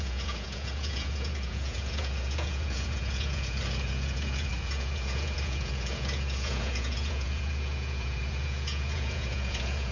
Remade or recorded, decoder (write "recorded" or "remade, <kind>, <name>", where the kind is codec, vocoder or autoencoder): remade, vocoder, Vocos